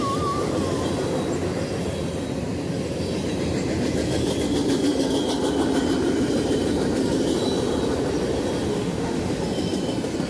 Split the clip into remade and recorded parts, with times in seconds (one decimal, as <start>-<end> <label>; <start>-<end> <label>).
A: 0.0-8.7 recorded; 8.7-9.4 remade; 9.4-10.3 recorded